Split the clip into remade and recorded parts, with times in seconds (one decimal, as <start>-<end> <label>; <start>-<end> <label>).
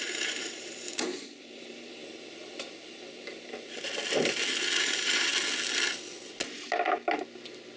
0.0-2.0 remade; 2.0-4.8 recorded; 4.8-5.3 remade; 5.3-7.8 recorded